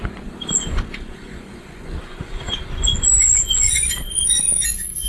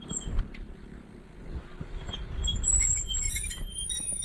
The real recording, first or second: second